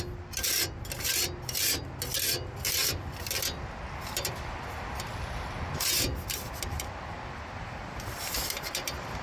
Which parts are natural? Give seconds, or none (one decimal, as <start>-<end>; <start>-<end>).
0.0-9.2